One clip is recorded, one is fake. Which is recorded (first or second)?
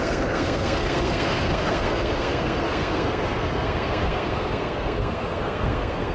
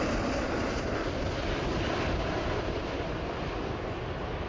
second